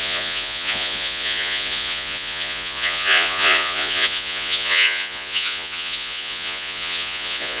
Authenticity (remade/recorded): remade